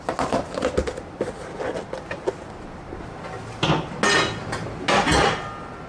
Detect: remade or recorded recorded